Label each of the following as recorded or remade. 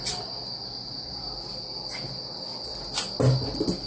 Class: recorded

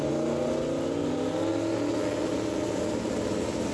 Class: recorded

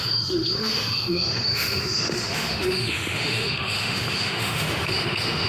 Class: remade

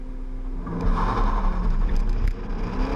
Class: recorded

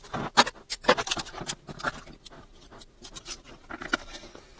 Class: recorded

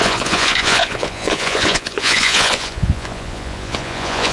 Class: remade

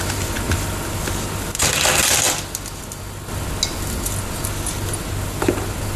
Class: recorded